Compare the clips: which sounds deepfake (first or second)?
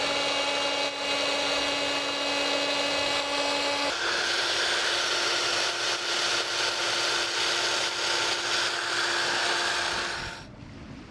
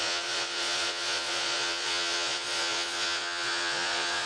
second